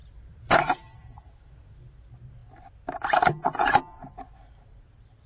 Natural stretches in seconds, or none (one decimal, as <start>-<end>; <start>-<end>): 1.8-5.3

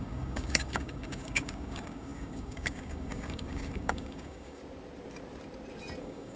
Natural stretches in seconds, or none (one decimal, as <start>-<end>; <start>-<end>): 4.6-6.0

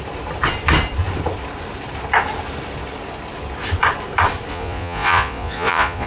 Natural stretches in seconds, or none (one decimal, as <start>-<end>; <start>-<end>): 0.0-4.5